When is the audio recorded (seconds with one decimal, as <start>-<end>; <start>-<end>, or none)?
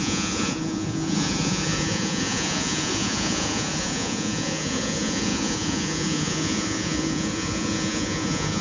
none